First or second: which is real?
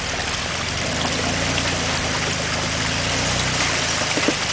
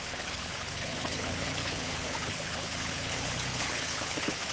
first